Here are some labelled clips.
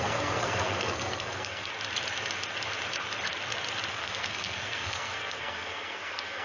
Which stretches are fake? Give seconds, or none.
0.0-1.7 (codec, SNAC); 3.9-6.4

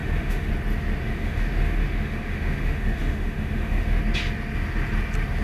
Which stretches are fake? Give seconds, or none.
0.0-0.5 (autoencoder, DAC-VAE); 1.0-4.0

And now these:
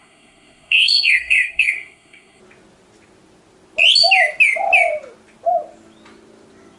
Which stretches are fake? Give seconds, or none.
0.0-2.4 (codec, SNAC)

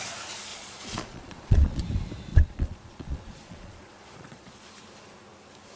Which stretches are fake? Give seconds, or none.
0.5-1.8 (vocoder, Vocos); 2.3-4.7

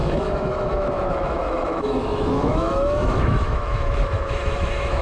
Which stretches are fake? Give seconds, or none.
0.0-5.0 (autoencoder, DAC-VAE)

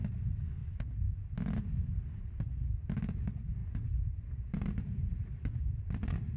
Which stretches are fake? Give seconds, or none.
3.6-5.7 (vocoder, BigVGAN v2)